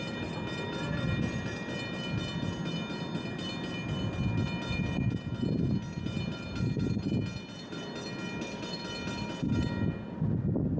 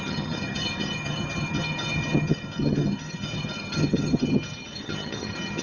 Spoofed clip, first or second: second